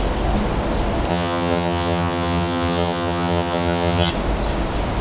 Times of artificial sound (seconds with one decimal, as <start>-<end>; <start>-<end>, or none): 1.1-4.1